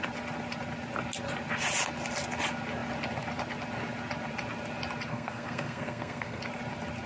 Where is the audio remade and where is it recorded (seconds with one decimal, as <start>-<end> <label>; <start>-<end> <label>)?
0.0-5.1 recorded; 5.1-6.4 remade; 6.4-7.1 recorded